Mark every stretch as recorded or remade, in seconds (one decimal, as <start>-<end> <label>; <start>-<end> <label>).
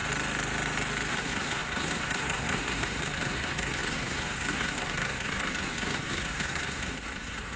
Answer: 0.0-1.1 recorded; 1.1-7.6 remade